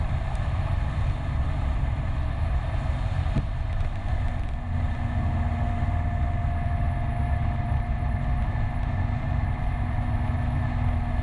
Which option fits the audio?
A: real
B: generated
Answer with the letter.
A